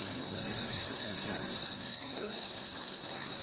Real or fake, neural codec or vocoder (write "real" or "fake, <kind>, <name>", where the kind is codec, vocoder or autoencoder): fake, codec, SNAC